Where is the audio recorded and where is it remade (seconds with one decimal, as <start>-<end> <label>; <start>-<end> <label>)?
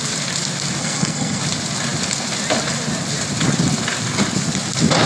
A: 0.0-0.8 recorded; 0.8-1.4 remade; 1.4-5.1 recorded